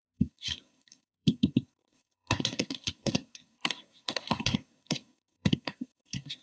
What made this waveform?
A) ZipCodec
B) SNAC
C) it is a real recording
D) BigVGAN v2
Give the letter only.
B